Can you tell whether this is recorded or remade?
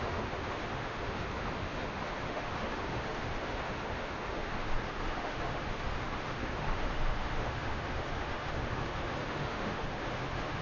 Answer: remade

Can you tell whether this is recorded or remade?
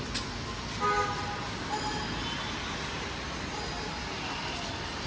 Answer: recorded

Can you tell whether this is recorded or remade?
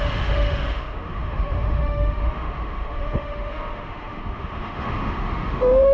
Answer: remade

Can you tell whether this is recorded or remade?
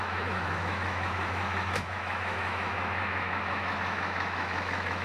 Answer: remade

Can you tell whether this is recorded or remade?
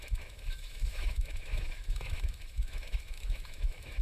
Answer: remade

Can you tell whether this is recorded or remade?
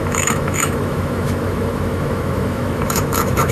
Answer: remade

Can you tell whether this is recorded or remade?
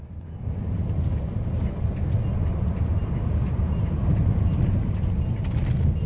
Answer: recorded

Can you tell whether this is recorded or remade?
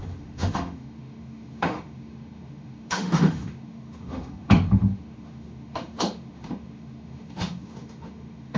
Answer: remade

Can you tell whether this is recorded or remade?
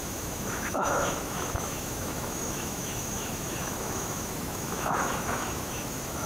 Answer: remade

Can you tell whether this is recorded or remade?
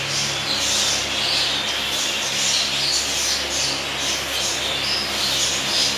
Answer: recorded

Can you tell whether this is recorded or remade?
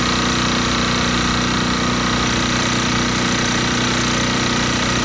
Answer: recorded